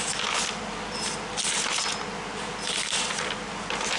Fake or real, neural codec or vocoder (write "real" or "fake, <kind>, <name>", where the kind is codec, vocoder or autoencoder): real